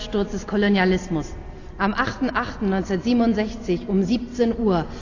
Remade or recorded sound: recorded